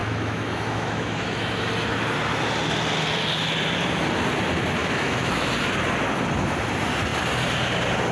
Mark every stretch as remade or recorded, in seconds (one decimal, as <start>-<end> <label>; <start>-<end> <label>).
0.0-1.7 remade; 1.7-4.8 recorded; 4.8-5.5 remade; 5.5-8.1 recorded